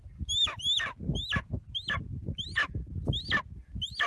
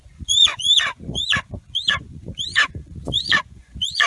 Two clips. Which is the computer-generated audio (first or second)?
second